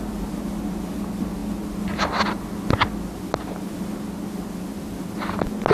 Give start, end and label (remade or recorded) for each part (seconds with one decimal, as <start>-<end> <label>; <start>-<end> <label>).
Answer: 0.0-5.7 recorded